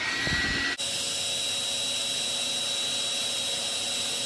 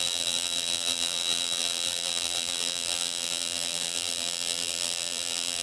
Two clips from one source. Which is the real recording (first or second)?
first